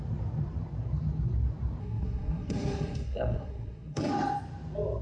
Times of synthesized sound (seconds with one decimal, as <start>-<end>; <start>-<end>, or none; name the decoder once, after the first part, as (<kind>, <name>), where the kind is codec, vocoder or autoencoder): 1.8-4.1 (codec, SNAC)